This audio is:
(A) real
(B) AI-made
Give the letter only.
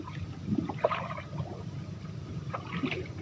B